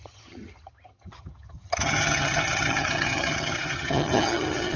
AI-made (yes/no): yes